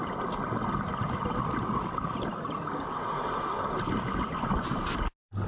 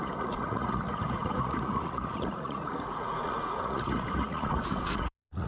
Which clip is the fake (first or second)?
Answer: second